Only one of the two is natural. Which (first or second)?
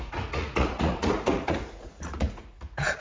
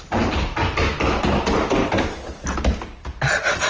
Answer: second